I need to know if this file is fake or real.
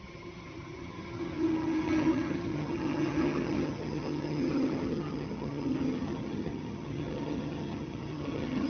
fake